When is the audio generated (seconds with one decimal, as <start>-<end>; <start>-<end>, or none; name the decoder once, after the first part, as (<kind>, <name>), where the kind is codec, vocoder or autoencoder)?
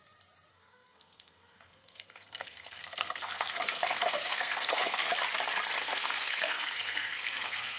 0.5-5.1 (codec, SNAC); 5.8-7.8